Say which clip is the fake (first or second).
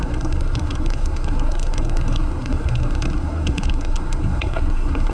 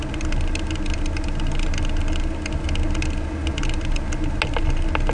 first